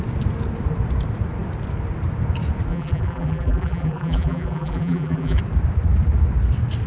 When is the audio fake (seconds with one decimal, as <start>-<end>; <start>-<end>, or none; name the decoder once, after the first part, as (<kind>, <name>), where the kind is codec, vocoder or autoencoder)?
2.7-5.4 (vocoder, BigVGAN v2)